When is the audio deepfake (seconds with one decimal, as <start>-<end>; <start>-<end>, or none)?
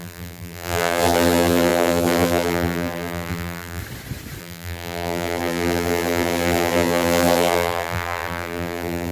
0.0-3.8; 4.4-9.1